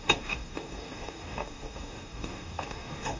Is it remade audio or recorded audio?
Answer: remade